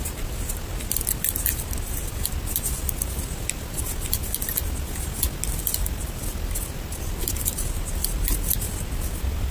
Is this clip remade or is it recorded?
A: recorded